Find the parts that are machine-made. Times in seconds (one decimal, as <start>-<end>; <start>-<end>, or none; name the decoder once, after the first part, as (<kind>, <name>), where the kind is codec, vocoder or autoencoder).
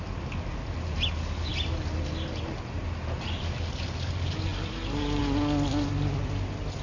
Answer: none